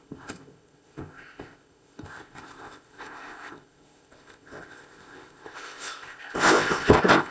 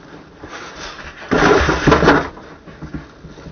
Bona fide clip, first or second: second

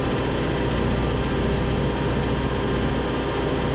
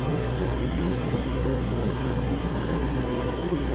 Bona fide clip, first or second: first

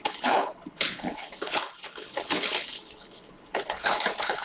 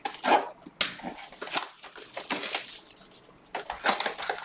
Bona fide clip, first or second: second